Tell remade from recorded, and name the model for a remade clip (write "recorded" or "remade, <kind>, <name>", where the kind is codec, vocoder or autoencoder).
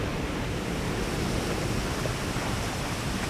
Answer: recorded